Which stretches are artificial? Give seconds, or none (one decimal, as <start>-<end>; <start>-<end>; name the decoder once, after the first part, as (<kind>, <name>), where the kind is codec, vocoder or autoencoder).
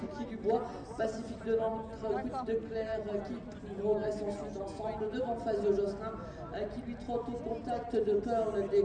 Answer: none